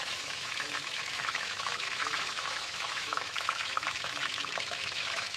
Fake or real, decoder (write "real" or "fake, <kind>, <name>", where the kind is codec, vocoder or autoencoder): fake, autoencoder, DAC-VAE